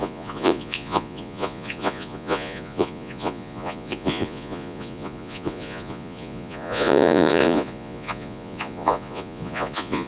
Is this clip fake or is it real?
fake